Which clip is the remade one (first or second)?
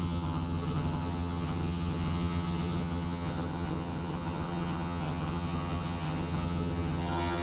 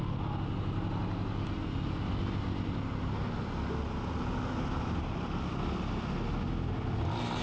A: first